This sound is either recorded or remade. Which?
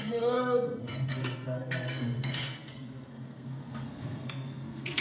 remade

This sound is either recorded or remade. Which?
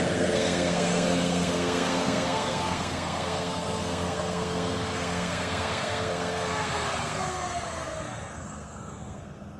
remade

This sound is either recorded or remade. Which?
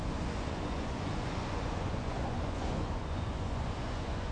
remade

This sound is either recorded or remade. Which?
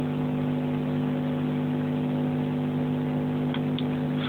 recorded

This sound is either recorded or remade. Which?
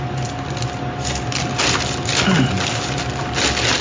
recorded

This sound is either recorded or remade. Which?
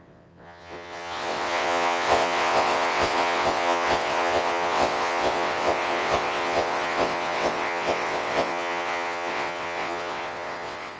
remade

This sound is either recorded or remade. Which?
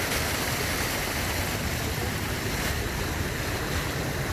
recorded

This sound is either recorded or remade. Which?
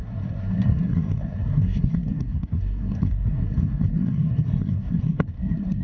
remade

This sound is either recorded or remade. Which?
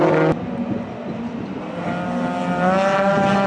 recorded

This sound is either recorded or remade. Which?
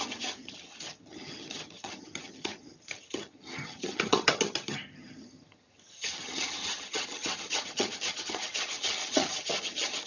remade